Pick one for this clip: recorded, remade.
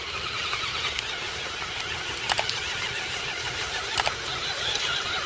remade